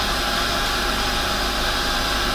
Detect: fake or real real